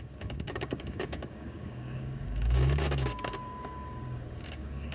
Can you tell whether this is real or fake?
fake